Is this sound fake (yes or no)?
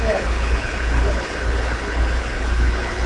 yes